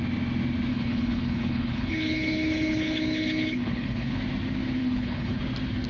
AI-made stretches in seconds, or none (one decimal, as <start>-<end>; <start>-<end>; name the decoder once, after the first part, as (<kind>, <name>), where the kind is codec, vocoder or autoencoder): 0.7-4.2 (codec, HILCodec); 4.8-5.4